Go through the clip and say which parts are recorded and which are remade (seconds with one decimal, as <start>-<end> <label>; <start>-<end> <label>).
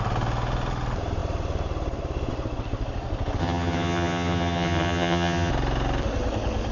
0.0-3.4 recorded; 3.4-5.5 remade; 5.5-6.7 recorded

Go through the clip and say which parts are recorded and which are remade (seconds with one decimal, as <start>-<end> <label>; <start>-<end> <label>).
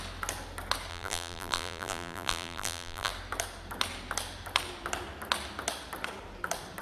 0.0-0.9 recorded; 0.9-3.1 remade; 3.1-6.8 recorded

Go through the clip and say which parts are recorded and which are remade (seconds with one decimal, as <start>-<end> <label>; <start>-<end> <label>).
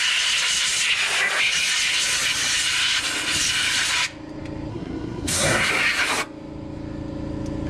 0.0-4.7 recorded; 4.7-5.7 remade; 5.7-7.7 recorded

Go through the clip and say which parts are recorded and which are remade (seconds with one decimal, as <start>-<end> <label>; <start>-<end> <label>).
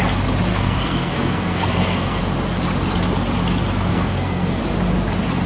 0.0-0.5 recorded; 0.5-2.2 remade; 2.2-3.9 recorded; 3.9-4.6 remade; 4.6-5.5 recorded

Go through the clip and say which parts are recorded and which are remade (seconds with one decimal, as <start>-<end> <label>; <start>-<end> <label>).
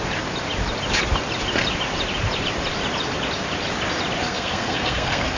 0.0-4.2 recorded; 4.2-5.4 remade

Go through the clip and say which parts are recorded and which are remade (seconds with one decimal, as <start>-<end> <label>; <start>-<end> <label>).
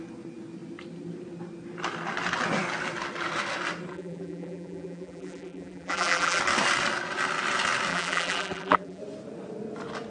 0.0-3.9 recorded; 3.9-6.4 remade; 6.4-7.9 recorded; 7.9-9.0 remade; 9.0-10.1 recorded